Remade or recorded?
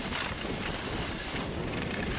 remade